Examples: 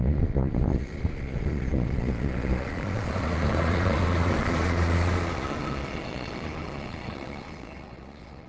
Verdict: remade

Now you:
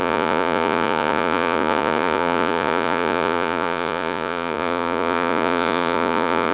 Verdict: remade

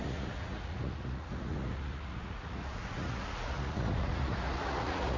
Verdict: remade